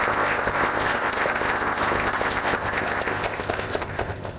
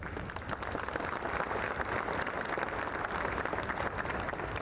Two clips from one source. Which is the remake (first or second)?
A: first